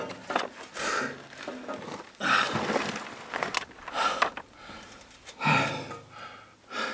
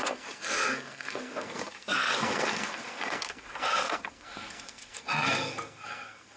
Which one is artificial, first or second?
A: second